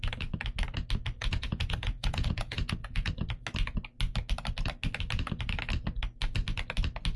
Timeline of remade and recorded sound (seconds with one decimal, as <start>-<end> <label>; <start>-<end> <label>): 0.0-1.2 recorded; 1.2-3.1 remade; 3.1-7.2 recorded